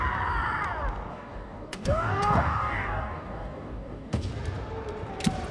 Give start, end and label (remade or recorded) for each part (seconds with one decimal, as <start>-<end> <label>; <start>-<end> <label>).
0.0-1.1 recorded; 1.1-4.3 remade; 4.3-5.5 recorded